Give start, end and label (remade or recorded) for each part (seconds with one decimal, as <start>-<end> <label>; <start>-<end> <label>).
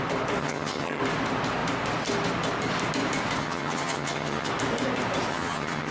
0.0-0.4 recorded; 0.4-1.0 remade; 1.0-3.4 recorded; 3.4-4.5 remade; 4.5-5.3 recorded; 5.3-5.9 remade